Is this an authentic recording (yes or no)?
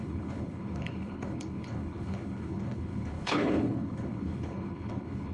no